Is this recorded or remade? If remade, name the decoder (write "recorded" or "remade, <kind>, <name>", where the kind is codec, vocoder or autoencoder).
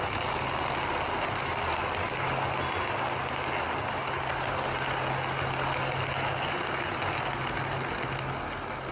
recorded